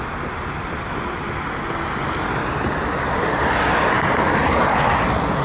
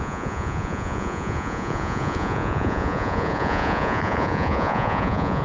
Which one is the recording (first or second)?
first